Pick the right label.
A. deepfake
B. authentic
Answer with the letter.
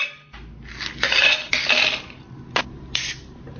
B